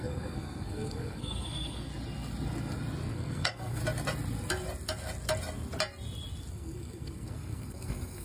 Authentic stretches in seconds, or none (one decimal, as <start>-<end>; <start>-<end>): 1.9-3.1; 3.8-6.5